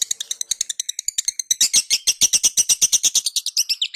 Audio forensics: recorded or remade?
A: recorded